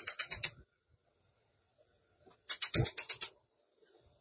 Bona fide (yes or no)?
yes